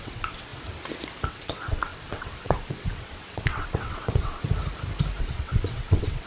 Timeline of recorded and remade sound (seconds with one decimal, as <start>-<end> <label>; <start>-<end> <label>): 0.0-0.5 remade; 0.5-1.3 recorded; 1.3-4.4 remade; 4.4-5.2 recorded; 5.2-6.3 remade